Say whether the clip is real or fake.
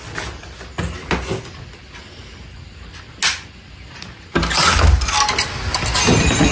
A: real